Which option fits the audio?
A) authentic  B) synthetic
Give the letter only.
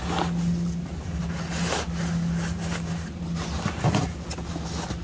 A